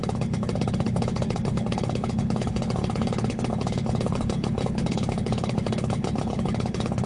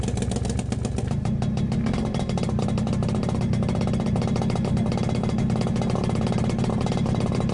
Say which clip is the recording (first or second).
second